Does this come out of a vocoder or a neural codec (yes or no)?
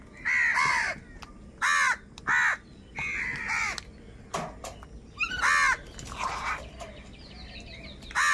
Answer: no